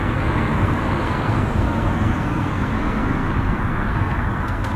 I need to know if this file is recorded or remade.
remade